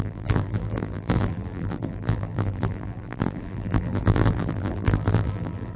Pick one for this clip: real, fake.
fake